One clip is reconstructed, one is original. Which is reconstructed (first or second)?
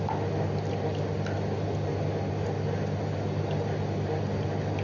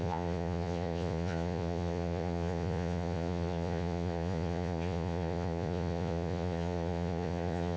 second